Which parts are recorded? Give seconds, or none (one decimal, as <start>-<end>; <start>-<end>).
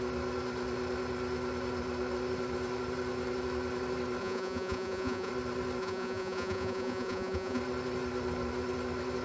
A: 0.0-4.2; 5.3-5.8; 7.6-9.2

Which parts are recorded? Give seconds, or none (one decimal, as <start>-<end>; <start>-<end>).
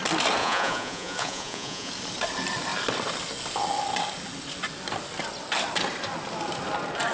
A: 0.0-0.4; 1.9-7.1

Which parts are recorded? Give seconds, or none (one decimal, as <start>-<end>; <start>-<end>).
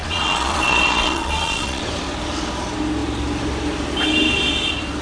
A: 1.8-5.0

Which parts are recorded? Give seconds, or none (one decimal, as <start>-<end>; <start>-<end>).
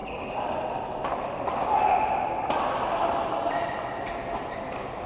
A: 0.0-5.1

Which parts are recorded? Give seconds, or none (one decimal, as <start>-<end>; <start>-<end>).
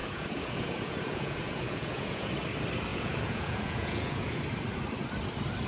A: 2.3-2.9; 4.4-5.7